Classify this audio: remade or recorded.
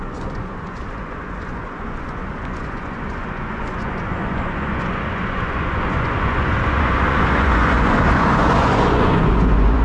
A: remade